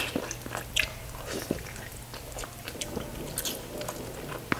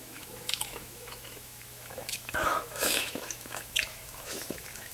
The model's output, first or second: second